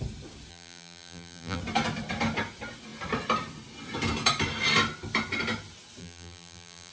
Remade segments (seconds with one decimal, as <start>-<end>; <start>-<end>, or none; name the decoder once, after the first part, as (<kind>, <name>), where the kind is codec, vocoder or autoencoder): 0.5-1.6 (vocoder, BigVGAN v2); 6.0-6.9